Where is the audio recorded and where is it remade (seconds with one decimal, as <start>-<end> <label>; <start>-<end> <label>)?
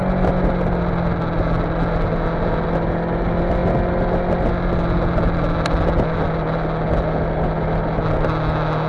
0.0-8.9 recorded